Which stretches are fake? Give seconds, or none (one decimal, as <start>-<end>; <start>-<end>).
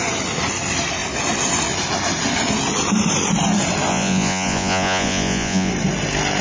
3.9-5.7